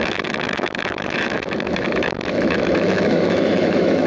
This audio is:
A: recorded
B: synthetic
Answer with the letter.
B